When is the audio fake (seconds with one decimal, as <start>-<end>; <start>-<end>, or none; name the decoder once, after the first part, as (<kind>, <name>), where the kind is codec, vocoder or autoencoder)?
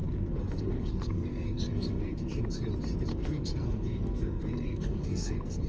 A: 0.0-2.4 (codec, SNAC); 3.1-5.7